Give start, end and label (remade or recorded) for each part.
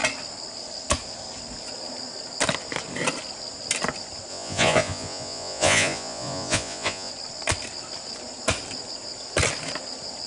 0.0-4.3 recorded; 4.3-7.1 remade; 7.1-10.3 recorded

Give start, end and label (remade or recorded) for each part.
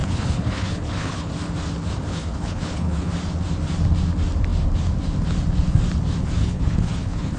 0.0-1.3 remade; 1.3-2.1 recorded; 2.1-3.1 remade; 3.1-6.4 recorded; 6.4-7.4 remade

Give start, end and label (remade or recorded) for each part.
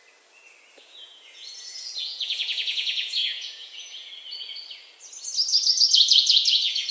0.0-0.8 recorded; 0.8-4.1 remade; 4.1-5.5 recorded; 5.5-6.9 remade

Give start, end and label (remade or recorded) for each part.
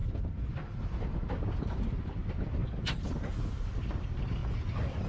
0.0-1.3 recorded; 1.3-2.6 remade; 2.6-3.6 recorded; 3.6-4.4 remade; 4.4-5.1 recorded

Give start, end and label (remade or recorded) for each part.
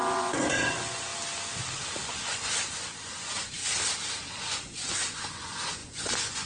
0.0-1.1 remade; 1.1-2.0 recorded; 2.0-3.6 remade; 3.6-4.3 recorded; 4.3-6.5 remade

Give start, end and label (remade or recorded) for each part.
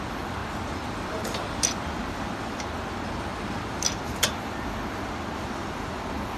0.0-0.4 remade; 0.4-1.1 recorded; 1.1-6.4 remade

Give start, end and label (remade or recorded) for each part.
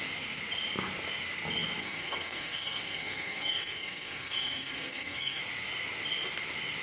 0.0-1.8 recorded; 1.8-5.4 remade; 5.4-6.8 recorded